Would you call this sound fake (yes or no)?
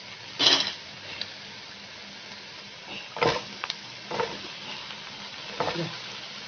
no